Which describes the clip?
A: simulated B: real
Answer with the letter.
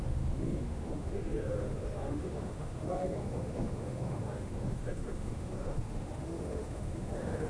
A